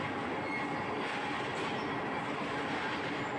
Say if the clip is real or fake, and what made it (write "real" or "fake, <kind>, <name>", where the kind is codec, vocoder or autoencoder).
real